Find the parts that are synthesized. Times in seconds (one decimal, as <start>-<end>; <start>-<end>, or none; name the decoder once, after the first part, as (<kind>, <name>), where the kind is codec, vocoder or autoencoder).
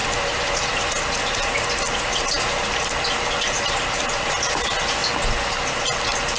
none